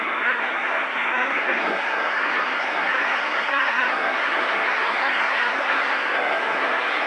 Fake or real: fake